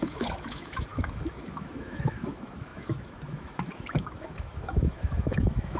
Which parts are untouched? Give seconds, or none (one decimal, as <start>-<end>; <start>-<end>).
none